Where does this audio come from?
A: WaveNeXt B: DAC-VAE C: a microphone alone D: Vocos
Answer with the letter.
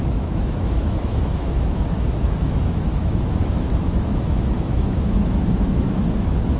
B